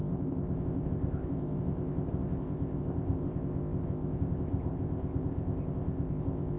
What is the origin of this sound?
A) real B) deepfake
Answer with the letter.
B